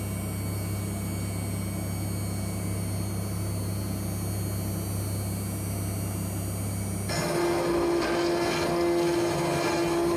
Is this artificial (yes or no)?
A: no